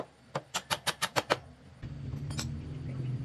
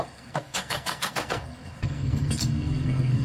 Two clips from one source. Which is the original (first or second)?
first